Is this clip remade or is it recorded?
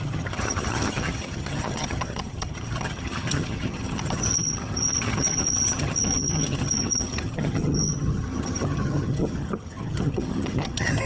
remade